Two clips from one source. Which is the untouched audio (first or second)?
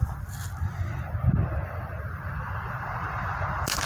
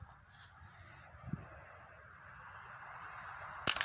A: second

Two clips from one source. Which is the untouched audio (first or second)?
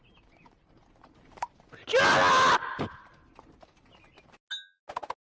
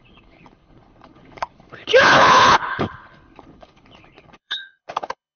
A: first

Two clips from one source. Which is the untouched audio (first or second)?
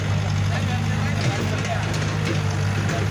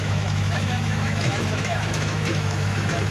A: first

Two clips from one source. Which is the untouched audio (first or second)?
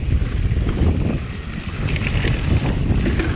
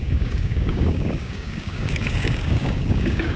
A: first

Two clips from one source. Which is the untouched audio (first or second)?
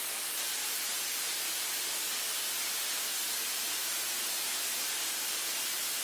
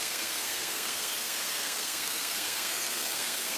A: first